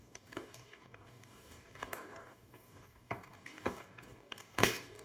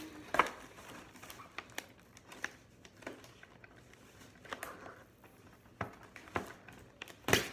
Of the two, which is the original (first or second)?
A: second